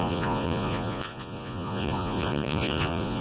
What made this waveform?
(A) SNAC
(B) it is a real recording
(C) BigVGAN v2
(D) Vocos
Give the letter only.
D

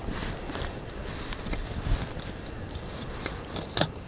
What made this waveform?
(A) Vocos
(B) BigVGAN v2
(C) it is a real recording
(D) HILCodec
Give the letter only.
C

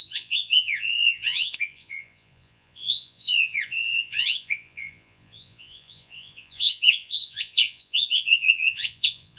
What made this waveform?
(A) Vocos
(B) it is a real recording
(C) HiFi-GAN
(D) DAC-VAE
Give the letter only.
A